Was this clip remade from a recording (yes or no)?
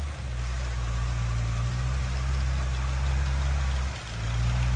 no